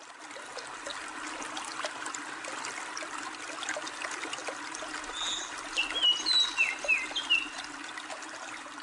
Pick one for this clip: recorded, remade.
recorded